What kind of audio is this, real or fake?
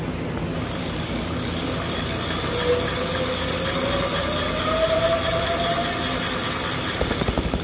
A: real